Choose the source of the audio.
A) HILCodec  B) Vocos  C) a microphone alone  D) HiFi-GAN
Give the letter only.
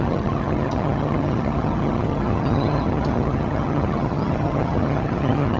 D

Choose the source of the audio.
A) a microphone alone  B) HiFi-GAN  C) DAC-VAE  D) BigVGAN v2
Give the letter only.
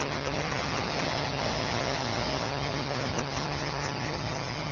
B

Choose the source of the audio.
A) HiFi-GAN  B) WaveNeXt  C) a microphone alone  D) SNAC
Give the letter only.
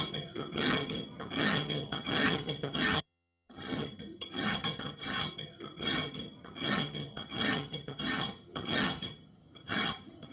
A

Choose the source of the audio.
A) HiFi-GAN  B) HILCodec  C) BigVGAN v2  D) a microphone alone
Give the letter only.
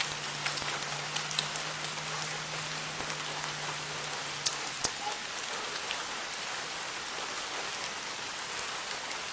D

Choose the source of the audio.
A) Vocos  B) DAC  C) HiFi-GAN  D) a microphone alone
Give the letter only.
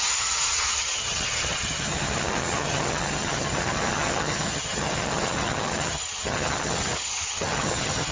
C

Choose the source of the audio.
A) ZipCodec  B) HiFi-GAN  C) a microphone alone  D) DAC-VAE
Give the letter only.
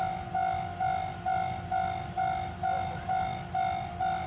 C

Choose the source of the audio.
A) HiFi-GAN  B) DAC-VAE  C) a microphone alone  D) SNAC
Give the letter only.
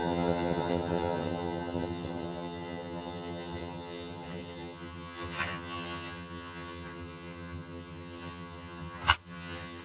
A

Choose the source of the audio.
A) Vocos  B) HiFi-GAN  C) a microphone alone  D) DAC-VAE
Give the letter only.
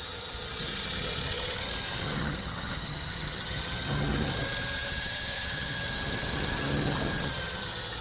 B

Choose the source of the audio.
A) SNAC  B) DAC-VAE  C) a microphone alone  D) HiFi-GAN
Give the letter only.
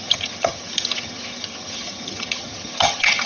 D